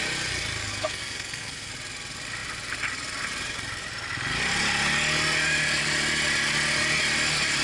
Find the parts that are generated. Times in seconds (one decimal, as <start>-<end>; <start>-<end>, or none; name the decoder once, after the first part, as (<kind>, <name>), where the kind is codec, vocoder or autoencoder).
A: 0.7-1.7 (codec, SNAC)